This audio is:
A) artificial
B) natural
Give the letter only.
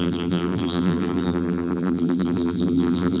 A